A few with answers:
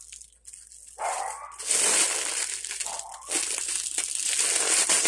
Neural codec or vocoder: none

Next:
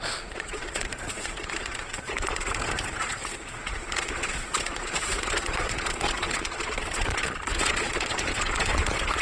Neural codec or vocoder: vocoder, Vocos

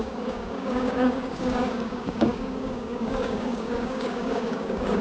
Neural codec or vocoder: codec, DAC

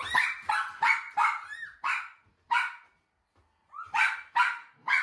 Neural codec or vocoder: none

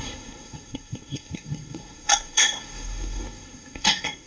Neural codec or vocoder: codec, SNAC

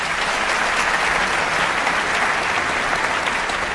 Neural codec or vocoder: none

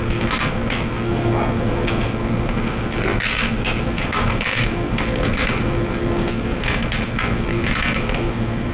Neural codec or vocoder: codec, SNAC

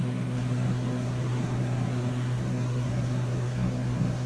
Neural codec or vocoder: codec, SNAC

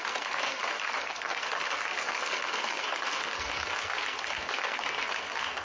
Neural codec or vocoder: codec, SNAC